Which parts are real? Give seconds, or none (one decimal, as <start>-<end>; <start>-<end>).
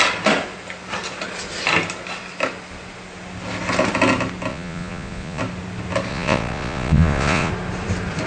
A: 0.0-4.5; 5.4-6.1; 7.5-8.3